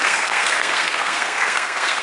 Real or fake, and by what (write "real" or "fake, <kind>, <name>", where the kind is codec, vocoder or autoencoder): fake, codec, SNAC